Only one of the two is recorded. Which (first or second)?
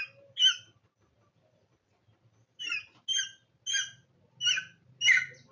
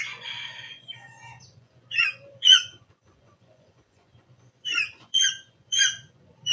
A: first